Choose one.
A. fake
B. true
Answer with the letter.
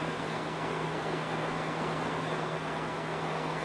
A